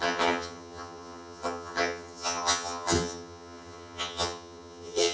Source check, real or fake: fake